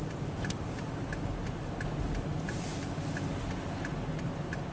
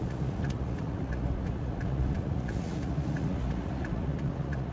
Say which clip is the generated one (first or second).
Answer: second